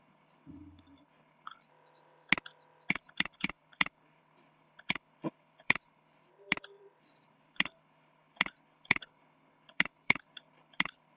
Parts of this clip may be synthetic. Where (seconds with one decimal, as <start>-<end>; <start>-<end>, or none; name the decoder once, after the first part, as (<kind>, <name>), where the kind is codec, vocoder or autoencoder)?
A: 0.0-1.7 (codec, HILCodec); 2.9-6.3; 7.0-11.2